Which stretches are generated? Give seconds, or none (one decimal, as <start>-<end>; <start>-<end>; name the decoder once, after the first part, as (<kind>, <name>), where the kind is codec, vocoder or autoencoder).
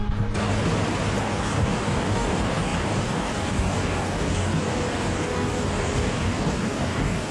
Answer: 0.0-0.5 (codec, DAC); 1.2-7.3